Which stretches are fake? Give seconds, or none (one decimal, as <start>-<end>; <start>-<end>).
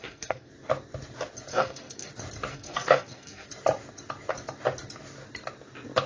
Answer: 0.0-0.5; 1.5-2.1; 2.5-3.5